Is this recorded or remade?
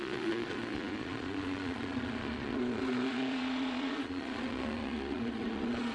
remade